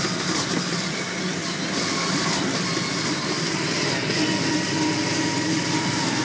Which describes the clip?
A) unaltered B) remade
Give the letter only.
A